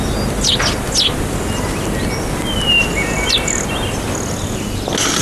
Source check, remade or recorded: recorded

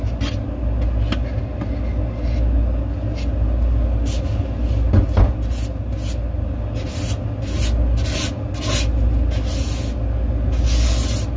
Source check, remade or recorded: recorded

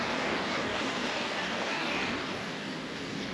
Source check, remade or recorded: remade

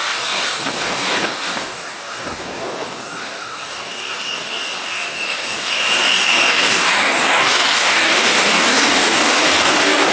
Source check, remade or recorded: remade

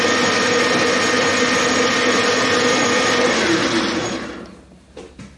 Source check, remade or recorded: recorded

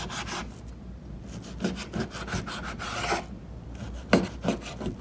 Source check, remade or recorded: recorded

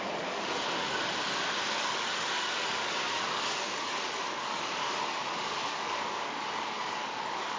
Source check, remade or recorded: remade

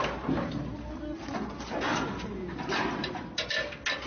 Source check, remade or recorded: recorded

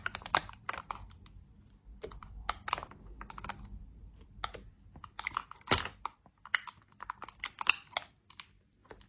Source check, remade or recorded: recorded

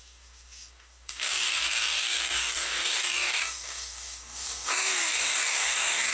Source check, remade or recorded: remade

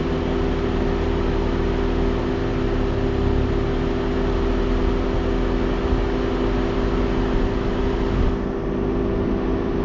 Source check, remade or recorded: recorded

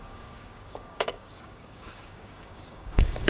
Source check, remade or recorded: remade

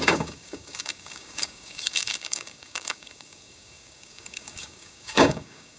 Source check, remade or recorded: remade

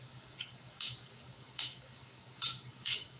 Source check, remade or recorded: remade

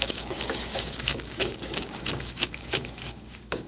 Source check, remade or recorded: remade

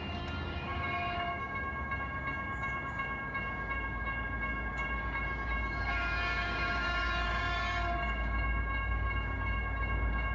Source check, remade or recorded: remade